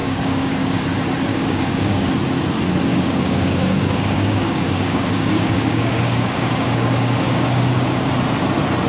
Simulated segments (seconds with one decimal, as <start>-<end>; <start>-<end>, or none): 0.0-0.8; 1.3-2.1; 2.9-8.1